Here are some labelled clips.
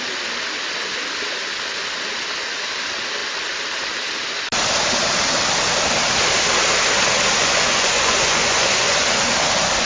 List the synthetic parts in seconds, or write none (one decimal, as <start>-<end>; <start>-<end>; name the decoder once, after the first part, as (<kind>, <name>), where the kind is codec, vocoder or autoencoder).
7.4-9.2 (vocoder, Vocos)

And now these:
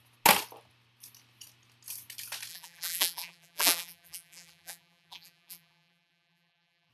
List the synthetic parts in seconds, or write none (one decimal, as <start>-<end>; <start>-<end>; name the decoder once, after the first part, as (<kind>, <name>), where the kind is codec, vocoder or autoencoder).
2.5-6.9 (vocoder, BigVGAN v2)

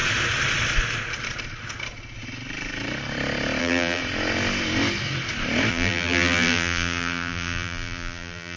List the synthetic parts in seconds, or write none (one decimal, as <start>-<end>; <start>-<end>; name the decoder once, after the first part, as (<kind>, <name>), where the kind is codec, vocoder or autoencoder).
3.6-4.0 (vocoder, BigVGAN v2); 5.7-8.6

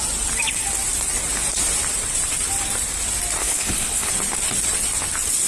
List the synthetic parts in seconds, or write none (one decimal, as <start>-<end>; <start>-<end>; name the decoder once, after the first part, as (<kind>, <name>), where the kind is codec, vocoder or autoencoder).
3.4-4.1 (codec, HILCodec)

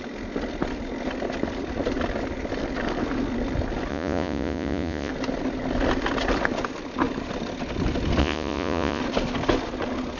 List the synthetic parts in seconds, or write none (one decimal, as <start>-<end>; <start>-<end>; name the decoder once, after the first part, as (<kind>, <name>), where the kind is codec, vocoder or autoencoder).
3.9-5.1 (vocoder, Vocos); 8.2-9.0

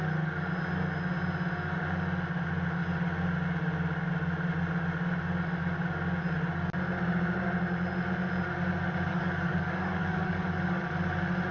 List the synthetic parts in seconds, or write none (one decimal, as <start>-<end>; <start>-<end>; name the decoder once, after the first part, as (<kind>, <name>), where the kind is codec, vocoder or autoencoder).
9.1-10.8 (codec, DAC)

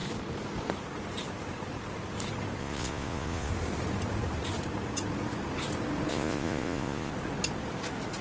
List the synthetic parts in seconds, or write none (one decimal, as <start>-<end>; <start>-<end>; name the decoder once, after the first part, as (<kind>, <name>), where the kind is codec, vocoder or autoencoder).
2.6-3.5 (vocoder, Vocos); 6.1-7.1